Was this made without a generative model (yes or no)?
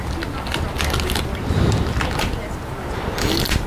yes